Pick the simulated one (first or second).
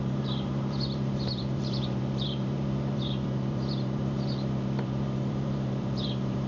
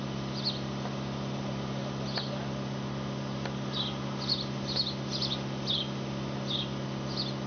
first